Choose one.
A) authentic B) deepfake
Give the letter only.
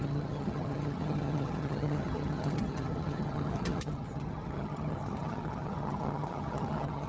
B